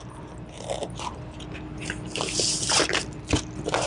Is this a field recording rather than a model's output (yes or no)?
yes